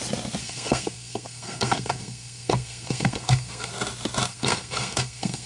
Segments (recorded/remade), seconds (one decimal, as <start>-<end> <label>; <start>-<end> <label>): 0.0-0.4 recorded; 0.4-3.7 remade; 3.7-4.3 recorded; 4.3-5.5 remade